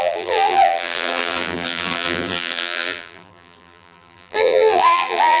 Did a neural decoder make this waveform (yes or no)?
yes